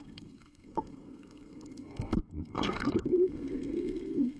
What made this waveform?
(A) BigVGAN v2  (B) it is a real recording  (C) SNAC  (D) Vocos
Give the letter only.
C